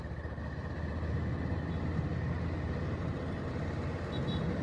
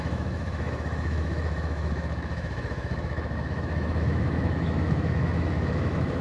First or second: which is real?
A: first